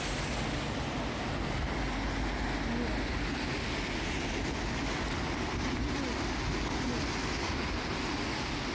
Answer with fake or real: real